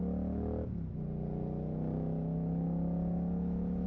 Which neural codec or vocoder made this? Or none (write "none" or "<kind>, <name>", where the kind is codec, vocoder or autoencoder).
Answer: none